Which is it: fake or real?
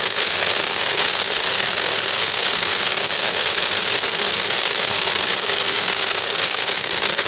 fake